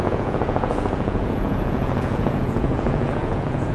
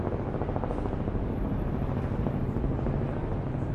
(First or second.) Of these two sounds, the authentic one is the second